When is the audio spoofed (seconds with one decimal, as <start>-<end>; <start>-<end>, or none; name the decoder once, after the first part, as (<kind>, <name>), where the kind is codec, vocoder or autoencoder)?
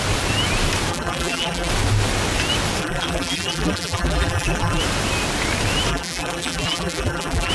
0.9-1.7 (vocoder, BigVGAN v2); 2.8-4.8; 5.9-7.5